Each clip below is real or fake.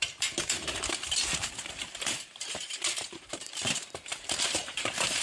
fake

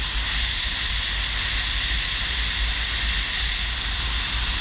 real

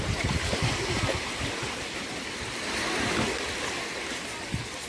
real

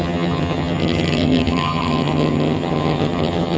fake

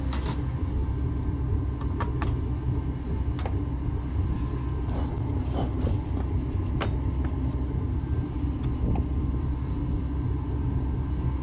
real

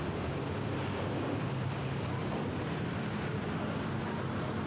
real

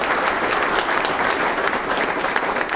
real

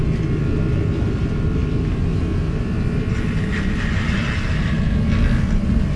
real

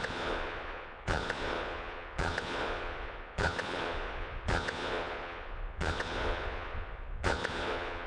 fake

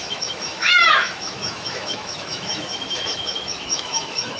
fake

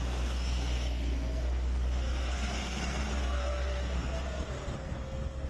fake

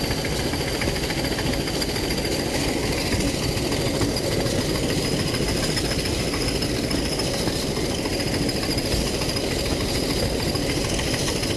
fake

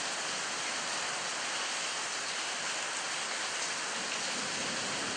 real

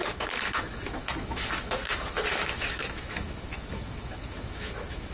fake